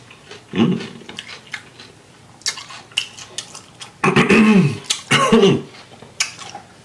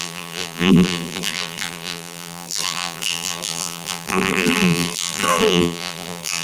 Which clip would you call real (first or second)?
first